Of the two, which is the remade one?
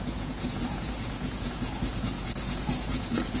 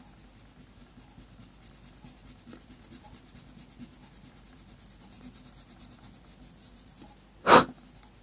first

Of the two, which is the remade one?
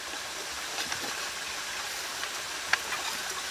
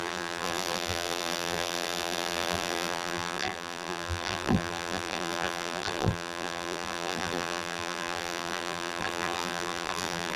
second